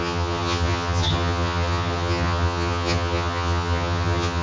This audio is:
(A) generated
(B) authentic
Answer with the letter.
A